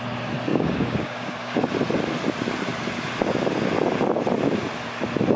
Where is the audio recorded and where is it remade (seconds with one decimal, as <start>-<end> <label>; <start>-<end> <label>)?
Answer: 0.0-0.5 recorded; 0.5-1.6 remade; 1.6-5.4 recorded